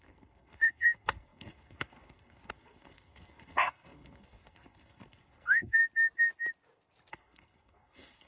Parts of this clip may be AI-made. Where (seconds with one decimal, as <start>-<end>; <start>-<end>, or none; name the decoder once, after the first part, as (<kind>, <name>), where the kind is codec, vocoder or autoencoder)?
0.0-5.8 (codec, SNAC); 7.1-8.3